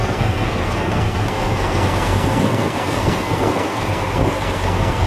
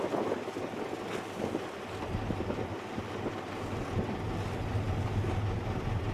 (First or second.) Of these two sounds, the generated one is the first